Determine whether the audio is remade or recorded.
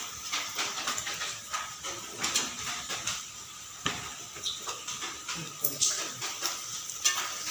remade